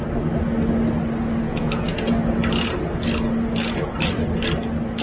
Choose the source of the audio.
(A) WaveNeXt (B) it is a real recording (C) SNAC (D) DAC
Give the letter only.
B